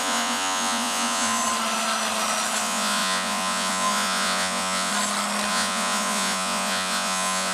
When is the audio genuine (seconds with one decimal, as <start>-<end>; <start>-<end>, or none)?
1.4-2.6; 4.9-5.5